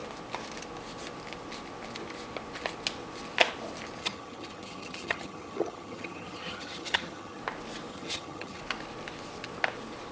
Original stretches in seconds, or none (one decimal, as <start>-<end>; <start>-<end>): 0.0-4.0; 7.4-7.9; 8.6-10.1